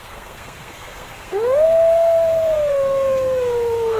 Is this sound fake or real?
fake